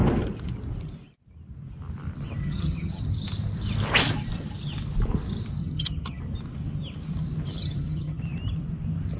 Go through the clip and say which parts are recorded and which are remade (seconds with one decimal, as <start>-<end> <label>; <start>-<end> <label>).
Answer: 0.0-2.4 recorded; 2.4-3.0 remade; 3.0-5.6 recorded; 5.6-6.2 remade; 6.2-7.6 recorded; 7.6-8.2 remade; 8.2-9.2 recorded